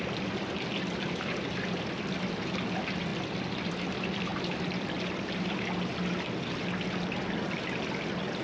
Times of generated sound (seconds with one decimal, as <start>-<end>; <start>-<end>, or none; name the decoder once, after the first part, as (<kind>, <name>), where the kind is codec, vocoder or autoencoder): none